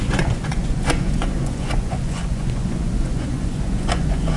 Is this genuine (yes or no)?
no